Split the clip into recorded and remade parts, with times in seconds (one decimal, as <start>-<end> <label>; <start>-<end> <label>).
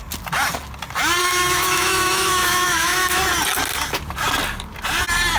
0.0-1.2 recorded; 1.2-3.2 remade; 3.2-5.4 recorded